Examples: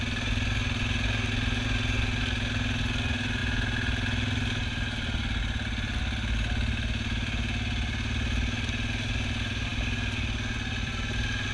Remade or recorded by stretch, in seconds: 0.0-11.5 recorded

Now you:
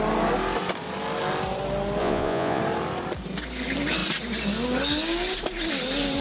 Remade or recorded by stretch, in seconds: 0.0-2.0 recorded; 2.0-2.6 remade; 2.6-6.2 recorded

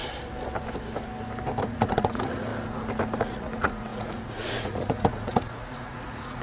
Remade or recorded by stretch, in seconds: 0.0-1.6 recorded; 1.6-2.5 remade; 2.5-3.2 recorded; 3.2-6.4 remade

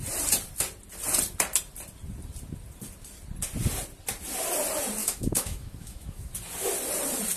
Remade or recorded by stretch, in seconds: 0.0-5.0 recorded; 5.0-6.3 remade; 6.3-7.4 recorded

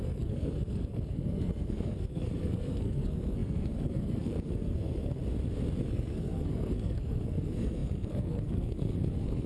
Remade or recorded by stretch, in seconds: 0.0-5.2 remade; 5.2-5.8 recorded; 5.8-9.5 remade

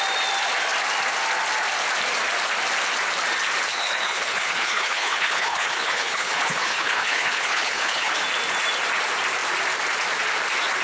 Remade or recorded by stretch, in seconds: 0.0-3.7 recorded; 3.7-8.1 remade; 8.1-10.8 recorded